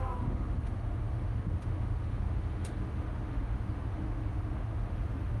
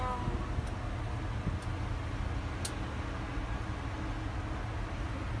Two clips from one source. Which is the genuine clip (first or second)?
second